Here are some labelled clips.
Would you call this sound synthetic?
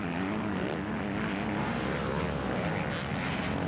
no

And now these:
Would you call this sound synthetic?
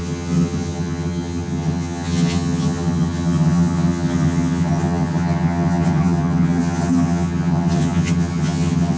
yes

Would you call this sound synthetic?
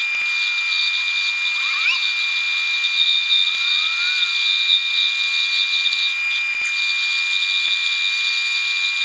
no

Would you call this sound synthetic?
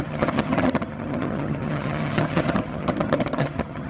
yes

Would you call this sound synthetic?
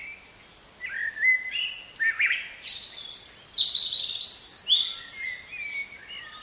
no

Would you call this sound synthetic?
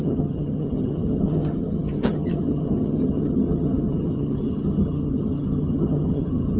yes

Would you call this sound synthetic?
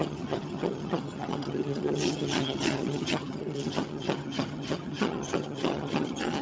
yes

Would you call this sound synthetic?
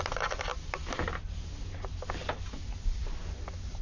no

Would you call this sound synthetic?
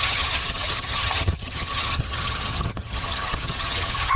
yes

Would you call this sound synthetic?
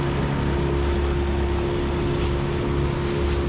no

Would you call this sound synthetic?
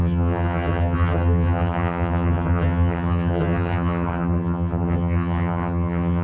yes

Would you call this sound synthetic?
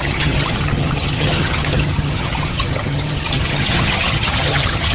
yes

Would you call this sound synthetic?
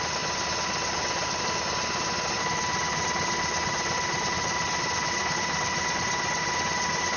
no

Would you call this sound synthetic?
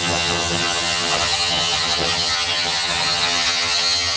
yes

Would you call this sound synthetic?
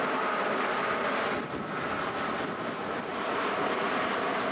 no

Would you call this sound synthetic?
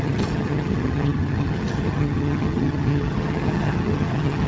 yes